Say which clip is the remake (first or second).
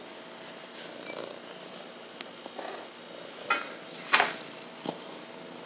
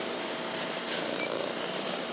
second